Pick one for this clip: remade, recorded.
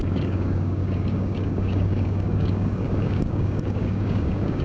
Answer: remade